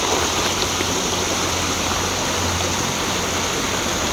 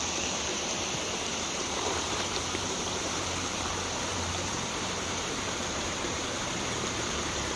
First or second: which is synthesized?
second